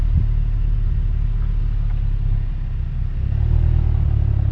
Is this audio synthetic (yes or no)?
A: no